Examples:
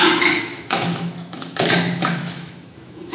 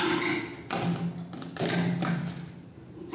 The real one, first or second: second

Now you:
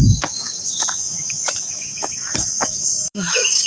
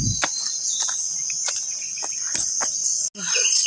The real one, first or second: second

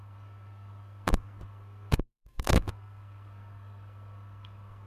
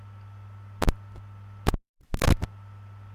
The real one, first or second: second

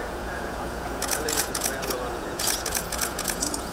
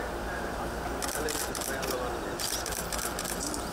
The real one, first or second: second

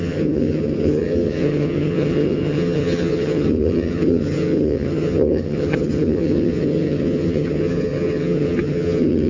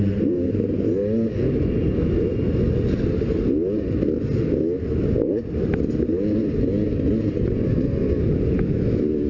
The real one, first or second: second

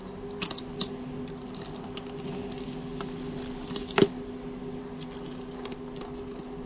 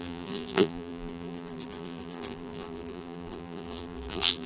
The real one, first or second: first